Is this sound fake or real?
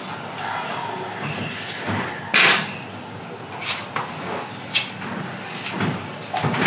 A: real